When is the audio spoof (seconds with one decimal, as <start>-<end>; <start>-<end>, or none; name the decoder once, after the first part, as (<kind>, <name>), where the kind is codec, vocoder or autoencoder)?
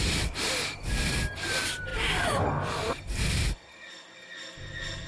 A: none